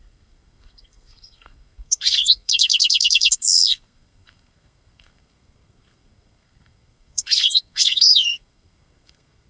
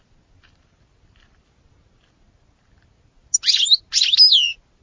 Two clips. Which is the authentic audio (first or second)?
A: second